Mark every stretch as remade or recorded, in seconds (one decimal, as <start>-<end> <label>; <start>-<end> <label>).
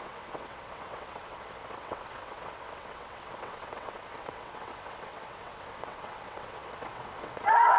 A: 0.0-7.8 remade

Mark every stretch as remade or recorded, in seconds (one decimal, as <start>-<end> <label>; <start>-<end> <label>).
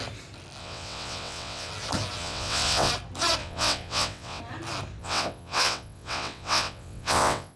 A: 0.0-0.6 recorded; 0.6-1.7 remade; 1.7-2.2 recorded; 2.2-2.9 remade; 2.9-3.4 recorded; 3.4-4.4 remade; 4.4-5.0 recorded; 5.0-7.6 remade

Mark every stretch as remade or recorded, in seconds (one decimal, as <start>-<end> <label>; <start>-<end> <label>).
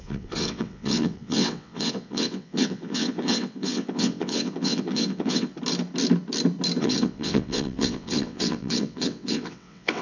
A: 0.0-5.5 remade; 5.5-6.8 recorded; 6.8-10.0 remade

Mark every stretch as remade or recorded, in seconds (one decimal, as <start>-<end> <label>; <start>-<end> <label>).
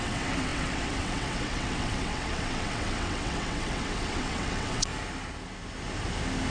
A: 0.0-4.9 remade; 4.9-6.5 recorded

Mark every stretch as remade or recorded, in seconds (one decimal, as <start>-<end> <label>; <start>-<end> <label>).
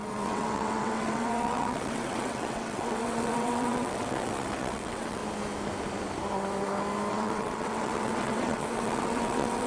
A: 0.0-5.2 remade; 5.2-7.1 recorded; 7.1-9.7 remade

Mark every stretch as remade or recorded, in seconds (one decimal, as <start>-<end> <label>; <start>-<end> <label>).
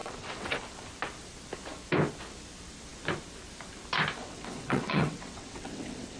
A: 0.0-0.6 remade; 0.6-4.2 recorded; 4.2-6.2 remade